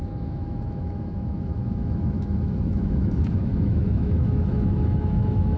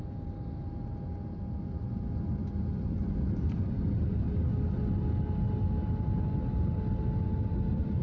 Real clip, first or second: second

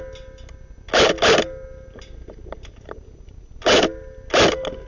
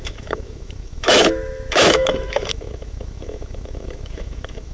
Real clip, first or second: first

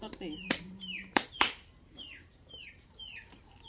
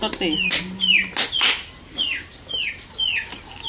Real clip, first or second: second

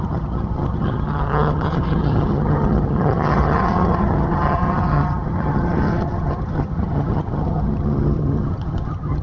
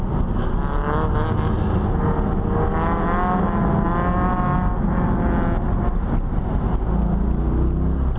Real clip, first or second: second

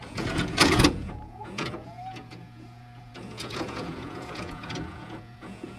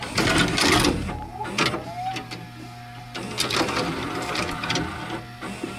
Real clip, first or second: second